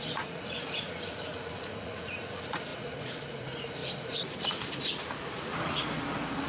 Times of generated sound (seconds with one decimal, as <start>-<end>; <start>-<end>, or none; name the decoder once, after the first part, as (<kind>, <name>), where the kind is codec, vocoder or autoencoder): 0.0-6.5 (vocoder, Vocos)